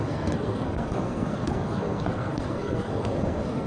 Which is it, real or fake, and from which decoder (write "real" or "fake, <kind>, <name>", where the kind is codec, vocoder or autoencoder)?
fake, codec, SNAC